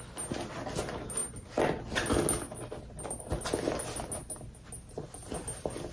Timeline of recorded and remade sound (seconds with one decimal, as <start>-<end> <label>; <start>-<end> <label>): 0.0-5.9 recorded